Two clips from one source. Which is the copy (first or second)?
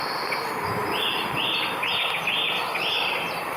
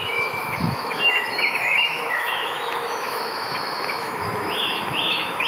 second